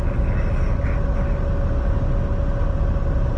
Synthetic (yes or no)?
no